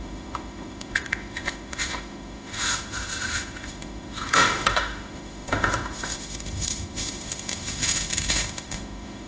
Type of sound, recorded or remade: remade